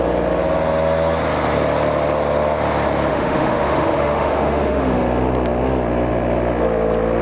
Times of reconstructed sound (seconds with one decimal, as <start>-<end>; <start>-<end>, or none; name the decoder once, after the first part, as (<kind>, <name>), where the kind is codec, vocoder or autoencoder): 3.1-5.0 (autoencoder, DAC-VAE)